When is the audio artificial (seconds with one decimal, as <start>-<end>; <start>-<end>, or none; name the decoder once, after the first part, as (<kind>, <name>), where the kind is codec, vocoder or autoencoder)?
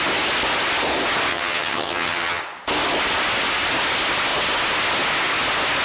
1.3-2.4 (vocoder, HiFi-GAN)